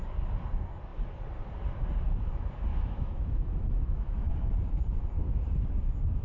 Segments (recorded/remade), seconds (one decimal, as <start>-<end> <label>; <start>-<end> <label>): 0.0-2.7 recorded; 2.7-4.3 remade; 4.3-6.2 recorded